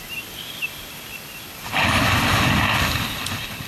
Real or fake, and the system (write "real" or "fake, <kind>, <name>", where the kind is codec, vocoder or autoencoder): real